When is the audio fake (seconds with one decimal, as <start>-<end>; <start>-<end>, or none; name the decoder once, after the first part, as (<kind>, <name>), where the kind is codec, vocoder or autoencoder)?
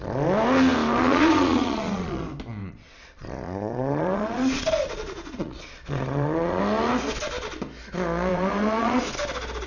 1.0-2.2 (vocoder, Vocos); 2.6-6.6; 8.3-9.0